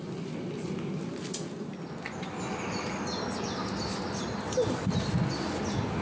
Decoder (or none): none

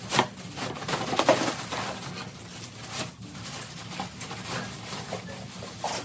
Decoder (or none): none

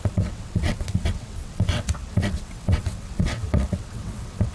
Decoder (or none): vocoder, WaveNeXt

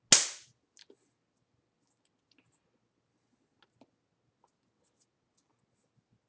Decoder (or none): none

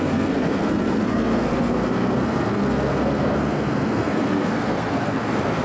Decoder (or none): codec, SNAC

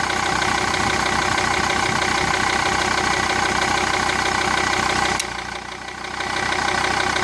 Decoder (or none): none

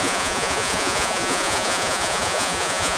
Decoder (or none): vocoder, Vocos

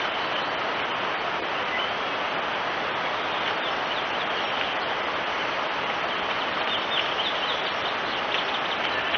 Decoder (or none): none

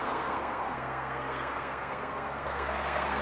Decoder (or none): codec, SNAC